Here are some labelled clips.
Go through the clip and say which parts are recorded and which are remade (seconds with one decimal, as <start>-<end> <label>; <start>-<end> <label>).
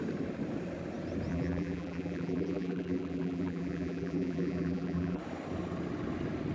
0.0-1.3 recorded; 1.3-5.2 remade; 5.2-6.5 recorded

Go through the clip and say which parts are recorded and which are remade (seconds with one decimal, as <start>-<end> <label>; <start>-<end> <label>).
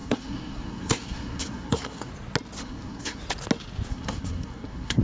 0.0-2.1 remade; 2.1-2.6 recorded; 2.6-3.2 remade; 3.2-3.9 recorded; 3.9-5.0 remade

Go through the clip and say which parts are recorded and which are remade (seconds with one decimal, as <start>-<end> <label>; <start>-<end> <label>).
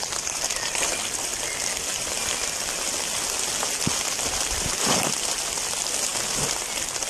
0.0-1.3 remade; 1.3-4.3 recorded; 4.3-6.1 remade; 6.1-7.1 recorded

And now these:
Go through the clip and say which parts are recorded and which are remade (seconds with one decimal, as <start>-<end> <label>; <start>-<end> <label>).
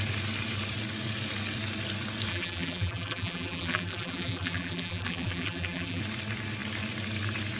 0.0-2.3 recorded; 2.3-6.0 remade; 6.0-7.6 recorded